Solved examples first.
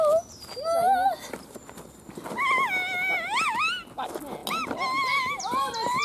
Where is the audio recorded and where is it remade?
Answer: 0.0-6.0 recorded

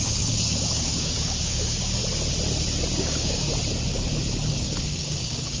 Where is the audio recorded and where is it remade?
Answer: 0.0-2.0 remade; 2.0-3.0 recorded; 3.0-3.5 remade; 3.5-4.5 recorded; 4.5-5.6 remade

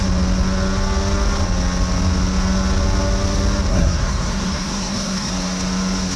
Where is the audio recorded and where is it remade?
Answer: 0.0-3.7 recorded; 3.7-5.3 remade; 5.3-6.2 recorded

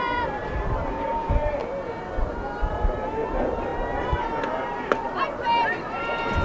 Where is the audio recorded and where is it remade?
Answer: 0.0-1.6 remade; 1.6-2.6 recorded; 2.6-3.7 remade; 3.7-5.2 recorded; 5.2-6.4 remade

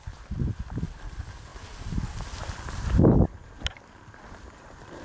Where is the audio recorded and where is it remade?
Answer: 0.0-5.0 recorded